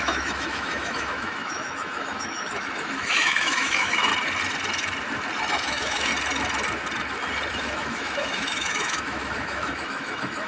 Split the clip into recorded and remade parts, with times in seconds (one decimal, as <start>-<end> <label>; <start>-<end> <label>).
0.0-4.1 remade; 4.1-5.5 recorded; 5.5-6.1 remade; 6.1-7.5 recorded; 7.5-10.5 remade